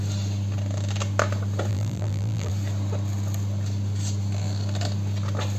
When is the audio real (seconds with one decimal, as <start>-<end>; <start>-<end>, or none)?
0.0-1.7; 2.5-5.6